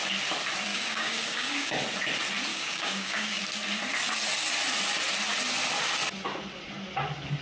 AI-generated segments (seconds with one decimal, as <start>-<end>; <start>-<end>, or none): 0.7-1.7; 2.5-3.4